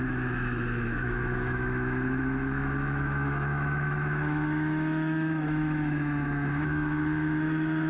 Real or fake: fake